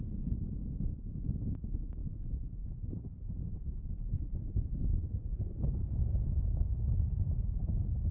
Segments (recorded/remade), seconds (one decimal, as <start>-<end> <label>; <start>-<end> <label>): 0.0-2.0 recorded; 2.0-4.0 remade; 4.0-4.9 recorded; 4.9-5.8 remade; 5.8-8.1 recorded